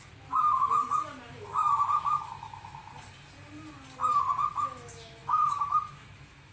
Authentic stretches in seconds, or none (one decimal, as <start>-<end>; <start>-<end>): 0.8-1.3; 2.8-4.5